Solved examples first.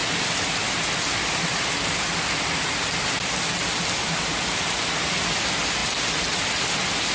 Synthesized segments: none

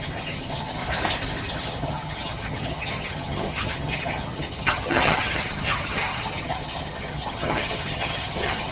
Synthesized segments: 0.0-0.8 (vocoder, HiFi-GAN); 1.5-8.7

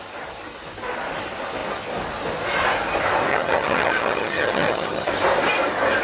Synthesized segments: 3.3-5.1 (vocoder, HiFi-GAN)

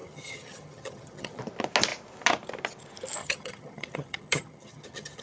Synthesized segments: 0.0-1.4 (vocoder, HiFi-GAN); 3.2-5.2

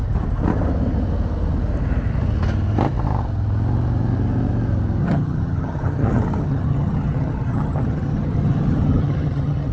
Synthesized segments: 5.0-9.7 (vocoder, HiFi-GAN)